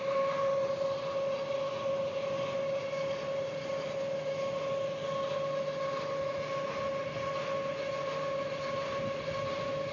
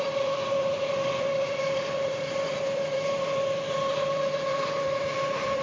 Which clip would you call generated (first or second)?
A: second